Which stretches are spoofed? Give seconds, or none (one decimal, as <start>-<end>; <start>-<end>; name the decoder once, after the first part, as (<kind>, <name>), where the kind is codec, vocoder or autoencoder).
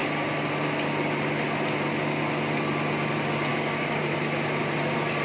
3.5-4.0 (codec, DAC)